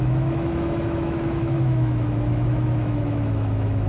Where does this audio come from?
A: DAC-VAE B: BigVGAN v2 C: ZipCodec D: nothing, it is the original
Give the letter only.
A